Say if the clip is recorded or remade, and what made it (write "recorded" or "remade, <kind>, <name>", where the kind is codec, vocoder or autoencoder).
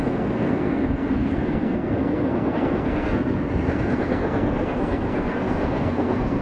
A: remade, codec, SNAC